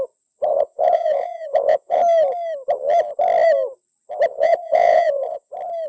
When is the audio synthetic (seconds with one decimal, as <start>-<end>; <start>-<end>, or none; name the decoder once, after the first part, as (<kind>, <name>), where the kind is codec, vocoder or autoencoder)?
0.5-2.0 (vocoder, Vocos); 4.3-5.5